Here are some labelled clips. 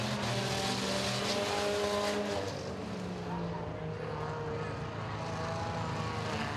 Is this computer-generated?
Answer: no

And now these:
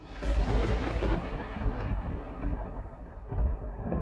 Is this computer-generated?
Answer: yes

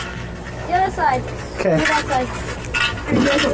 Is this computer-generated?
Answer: no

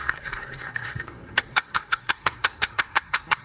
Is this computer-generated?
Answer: yes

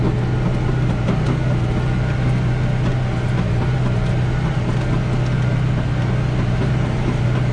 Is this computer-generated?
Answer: no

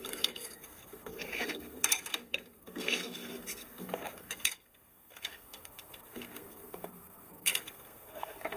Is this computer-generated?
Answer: yes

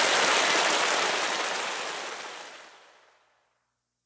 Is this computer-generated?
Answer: no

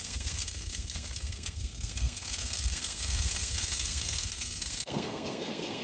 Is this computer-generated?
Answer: yes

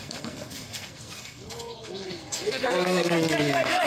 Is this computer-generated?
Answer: yes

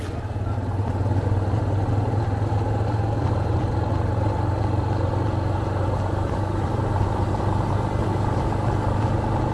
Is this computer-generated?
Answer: no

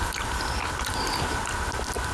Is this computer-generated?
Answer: no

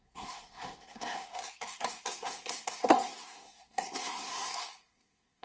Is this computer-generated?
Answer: yes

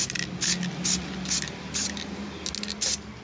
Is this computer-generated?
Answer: no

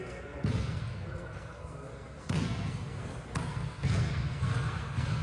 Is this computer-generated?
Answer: yes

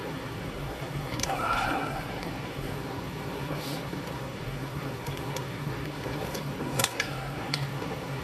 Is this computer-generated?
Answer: yes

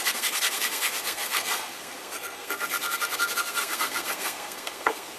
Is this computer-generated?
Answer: yes